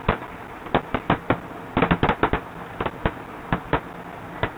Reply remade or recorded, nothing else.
recorded